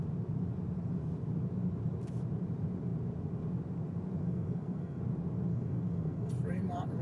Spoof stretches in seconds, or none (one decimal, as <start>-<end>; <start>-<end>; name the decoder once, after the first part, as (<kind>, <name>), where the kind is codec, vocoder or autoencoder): 4.2-5.0 (codec, SNAC); 5.5-6.3